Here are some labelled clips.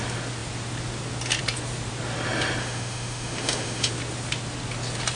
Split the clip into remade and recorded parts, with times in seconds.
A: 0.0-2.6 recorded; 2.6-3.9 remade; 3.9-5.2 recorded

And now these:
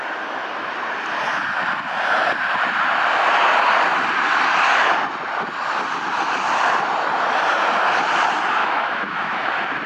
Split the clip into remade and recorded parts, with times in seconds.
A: 0.0-8.6 recorded; 8.6-9.5 remade; 9.5-9.9 recorded

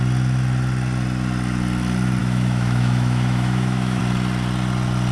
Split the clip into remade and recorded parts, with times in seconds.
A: 0.0-2.2 recorded; 2.2-4.0 remade; 4.0-5.1 recorded

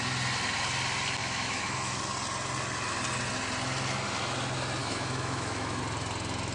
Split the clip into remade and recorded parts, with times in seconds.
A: 0.0-1.2 recorded; 1.2-2.0 remade; 2.0-4.8 recorded; 4.8-5.8 remade; 5.8-6.5 recorded

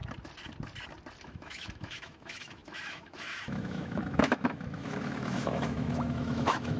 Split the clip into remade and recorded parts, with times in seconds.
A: 0.0-1.2 recorded; 1.2-6.8 remade

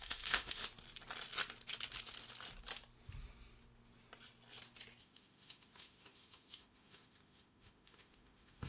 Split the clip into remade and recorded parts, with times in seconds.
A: 0.0-0.6 remade; 0.6-5.0 recorded; 5.0-8.7 remade